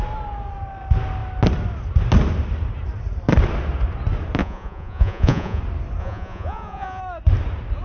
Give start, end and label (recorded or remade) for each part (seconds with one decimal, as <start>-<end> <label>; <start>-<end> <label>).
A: 0.0-4.4 recorded; 4.4-5.6 remade; 5.6-6.0 recorded; 6.0-7.0 remade; 7.0-7.8 recorded